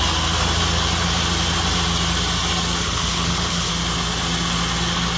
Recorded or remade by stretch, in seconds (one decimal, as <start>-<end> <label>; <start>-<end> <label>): 0.0-2.8 recorded; 2.8-3.7 remade; 3.7-5.2 recorded